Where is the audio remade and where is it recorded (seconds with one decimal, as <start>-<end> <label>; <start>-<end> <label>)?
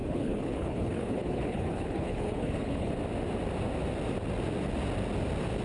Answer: 0.0-2.9 remade; 2.9-5.6 recorded